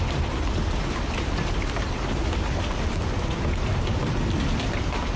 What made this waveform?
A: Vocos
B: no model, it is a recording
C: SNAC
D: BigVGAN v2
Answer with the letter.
B